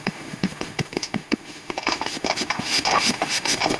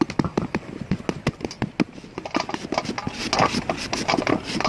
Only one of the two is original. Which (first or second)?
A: second